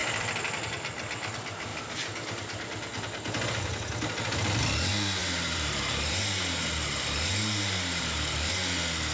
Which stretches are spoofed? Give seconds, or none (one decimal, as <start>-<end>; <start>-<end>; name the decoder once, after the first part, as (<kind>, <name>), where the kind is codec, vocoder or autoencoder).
5.2-8.5 (vocoder, BigVGAN v2)